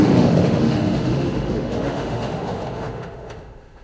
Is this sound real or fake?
fake